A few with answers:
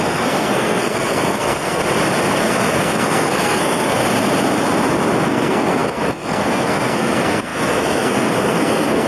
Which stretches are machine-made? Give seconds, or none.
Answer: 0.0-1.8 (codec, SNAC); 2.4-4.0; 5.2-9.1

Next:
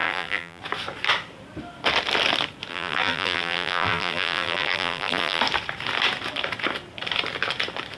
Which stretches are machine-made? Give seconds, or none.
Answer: 0.0-0.6 (vocoder, BigVGAN v2); 2.7-5.4